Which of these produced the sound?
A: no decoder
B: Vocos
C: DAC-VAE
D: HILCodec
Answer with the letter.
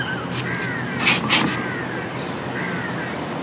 A